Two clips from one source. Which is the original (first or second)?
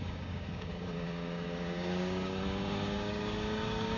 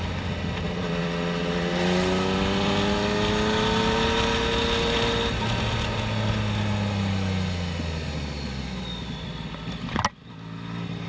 second